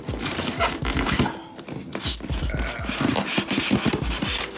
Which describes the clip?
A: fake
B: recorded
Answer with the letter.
B